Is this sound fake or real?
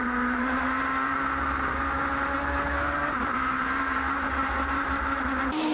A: fake